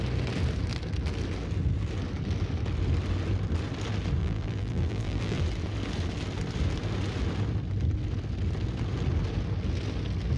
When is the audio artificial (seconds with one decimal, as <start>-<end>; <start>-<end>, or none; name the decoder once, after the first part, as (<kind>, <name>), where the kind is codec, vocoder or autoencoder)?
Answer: 4.2-5.4 (vocoder, BigVGAN v2)